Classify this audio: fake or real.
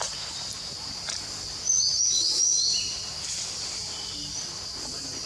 real